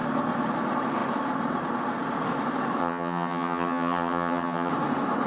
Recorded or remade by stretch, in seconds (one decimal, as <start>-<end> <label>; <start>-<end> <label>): 0.0-2.8 recorded; 2.8-4.7 remade; 4.7-5.3 recorded